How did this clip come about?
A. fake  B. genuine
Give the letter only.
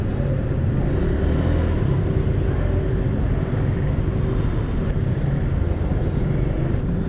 B